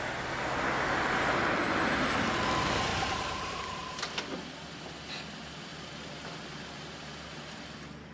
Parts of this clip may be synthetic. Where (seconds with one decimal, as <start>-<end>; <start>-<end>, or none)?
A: 2.9-3.6; 5.7-6.9